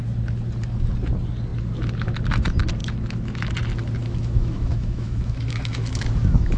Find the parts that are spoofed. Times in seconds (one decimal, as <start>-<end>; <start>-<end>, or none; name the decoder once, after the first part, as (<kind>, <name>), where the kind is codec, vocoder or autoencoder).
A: 2.8-3.5 (autoencoder, DAC-VAE); 4.0-6.6